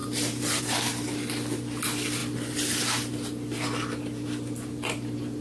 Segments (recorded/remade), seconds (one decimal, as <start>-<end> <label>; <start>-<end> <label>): 0.0-5.4 recorded